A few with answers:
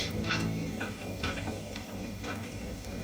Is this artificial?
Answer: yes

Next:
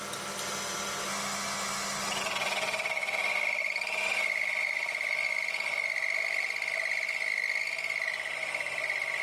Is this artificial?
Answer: no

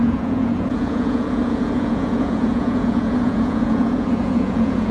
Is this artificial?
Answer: yes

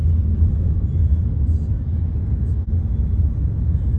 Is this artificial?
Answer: no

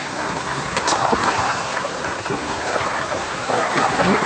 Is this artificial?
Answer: yes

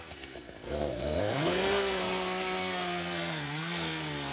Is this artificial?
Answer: yes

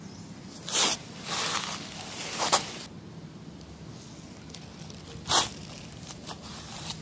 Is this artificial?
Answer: no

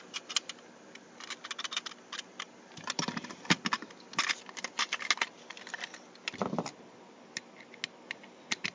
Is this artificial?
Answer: no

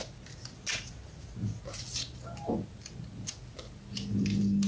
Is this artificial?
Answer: no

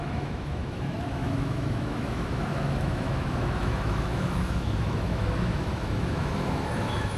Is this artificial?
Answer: yes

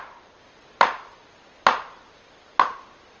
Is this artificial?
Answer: no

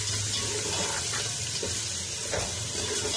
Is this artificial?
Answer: no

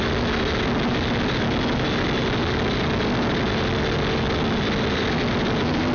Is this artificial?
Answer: no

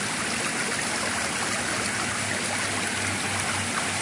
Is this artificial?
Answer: no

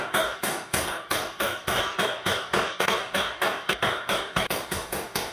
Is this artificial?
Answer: yes